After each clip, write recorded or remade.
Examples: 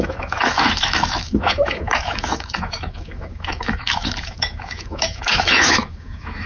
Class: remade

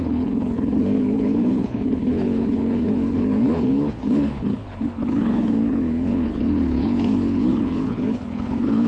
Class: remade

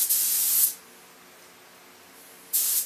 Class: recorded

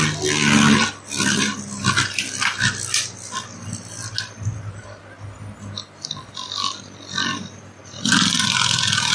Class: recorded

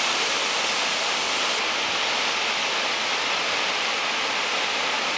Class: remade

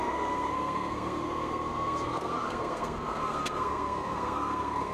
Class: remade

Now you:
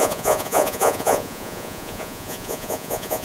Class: remade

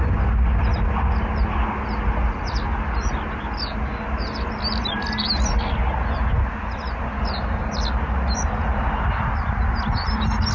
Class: recorded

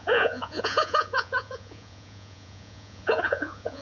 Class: remade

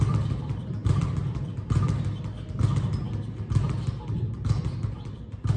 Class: recorded